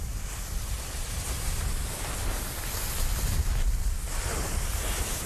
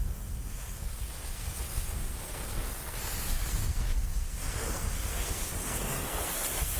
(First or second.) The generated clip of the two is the second